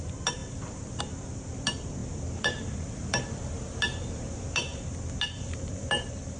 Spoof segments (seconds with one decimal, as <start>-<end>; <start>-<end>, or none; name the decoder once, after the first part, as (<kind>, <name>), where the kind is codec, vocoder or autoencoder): 0.0-6.4 (vocoder, BigVGAN v2)